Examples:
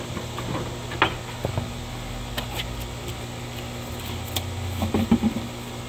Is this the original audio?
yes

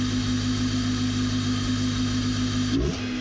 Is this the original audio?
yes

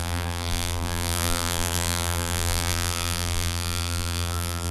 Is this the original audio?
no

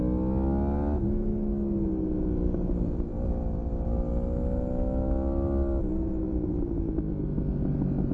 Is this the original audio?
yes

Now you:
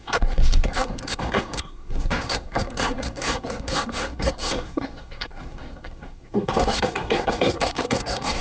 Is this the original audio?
no